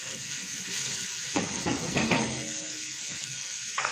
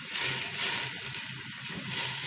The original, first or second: second